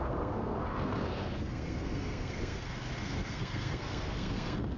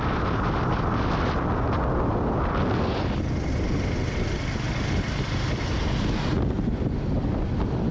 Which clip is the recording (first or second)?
second